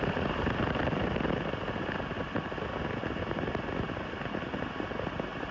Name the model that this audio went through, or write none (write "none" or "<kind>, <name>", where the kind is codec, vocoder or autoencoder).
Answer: none